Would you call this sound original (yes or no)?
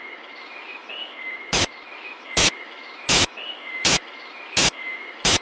no